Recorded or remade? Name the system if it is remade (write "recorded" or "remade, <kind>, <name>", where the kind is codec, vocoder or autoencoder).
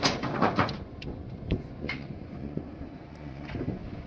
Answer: remade, vocoder, Vocos